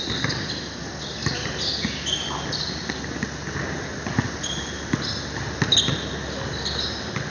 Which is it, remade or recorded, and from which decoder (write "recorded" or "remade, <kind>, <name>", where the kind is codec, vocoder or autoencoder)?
recorded